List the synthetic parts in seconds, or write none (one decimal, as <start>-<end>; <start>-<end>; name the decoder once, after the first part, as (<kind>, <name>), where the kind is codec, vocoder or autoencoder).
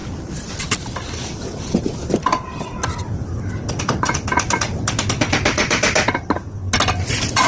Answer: none